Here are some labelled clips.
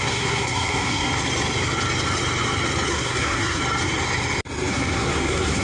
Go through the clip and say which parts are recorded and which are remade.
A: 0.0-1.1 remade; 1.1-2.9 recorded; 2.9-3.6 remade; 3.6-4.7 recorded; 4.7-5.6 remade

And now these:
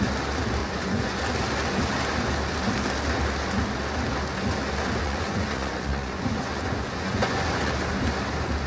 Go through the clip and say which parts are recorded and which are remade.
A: 0.0-0.6 recorded; 0.6-1.2 remade; 1.2-5.0 recorded; 5.0-7.7 remade; 7.7-8.7 recorded

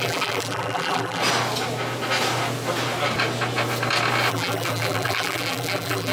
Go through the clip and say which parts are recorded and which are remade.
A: 0.0-1.2 remade; 1.2-4.3 recorded; 4.3-6.1 remade

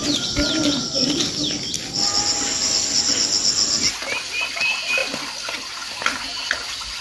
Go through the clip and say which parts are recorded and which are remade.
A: 0.0-7.0 recorded

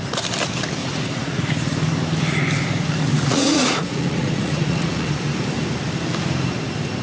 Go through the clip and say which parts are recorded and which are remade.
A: 0.0-0.8 recorded; 0.8-1.5 remade; 1.5-3.1 recorded; 3.1-5.1 remade; 5.1-7.0 recorded